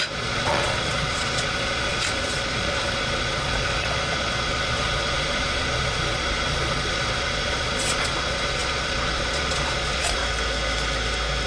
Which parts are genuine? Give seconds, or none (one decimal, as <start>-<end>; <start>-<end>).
10.2-11.5